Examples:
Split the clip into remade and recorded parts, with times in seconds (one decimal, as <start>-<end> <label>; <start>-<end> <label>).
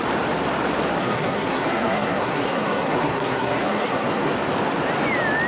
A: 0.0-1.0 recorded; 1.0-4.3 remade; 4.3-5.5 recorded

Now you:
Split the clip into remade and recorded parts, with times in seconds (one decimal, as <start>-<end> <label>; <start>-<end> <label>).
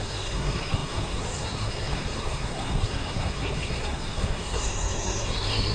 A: 0.0-5.7 remade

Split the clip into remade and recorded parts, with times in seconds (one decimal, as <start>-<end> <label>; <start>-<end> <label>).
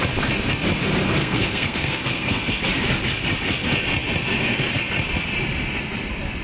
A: 0.0-1.2 recorded; 1.2-2.6 remade; 2.6-6.4 recorded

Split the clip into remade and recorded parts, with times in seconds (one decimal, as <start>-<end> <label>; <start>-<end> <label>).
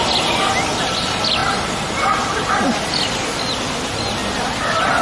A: 0.0-5.0 recorded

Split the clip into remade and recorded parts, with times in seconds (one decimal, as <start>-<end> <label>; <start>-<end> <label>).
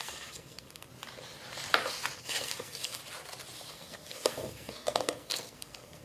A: 0.0-0.9 remade; 0.9-2.2 recorded; 2.2-3.0 remade; 3.0-3.7 recorded; 3.7-6.0 remade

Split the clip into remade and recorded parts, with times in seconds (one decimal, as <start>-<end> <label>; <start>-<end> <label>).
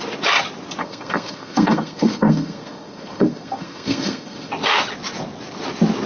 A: 0.0-0.8 recorded; 0.8-4.5 remade; 4.5-6.1 recorded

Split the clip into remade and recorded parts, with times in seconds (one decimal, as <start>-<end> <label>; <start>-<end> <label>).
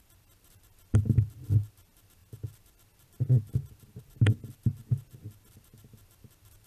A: 0.0-6.7 recorded